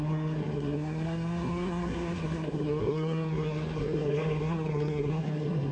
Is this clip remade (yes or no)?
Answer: yes